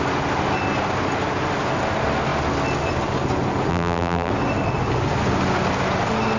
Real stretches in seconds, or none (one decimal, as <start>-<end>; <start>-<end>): 0.0-3.7; 4.3-6.4